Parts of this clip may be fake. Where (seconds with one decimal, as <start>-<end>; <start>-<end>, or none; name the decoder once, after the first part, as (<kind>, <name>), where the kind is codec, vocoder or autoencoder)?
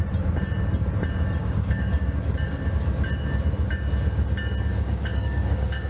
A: 1.4-2.6 (codec, DAC); 4.7-5.9